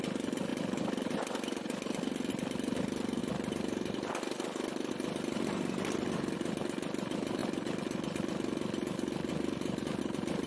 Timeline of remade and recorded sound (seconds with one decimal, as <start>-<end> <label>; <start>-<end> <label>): 0.0-3.2 remade; 3.2-4.9 recorded; 4.9-10.5 remade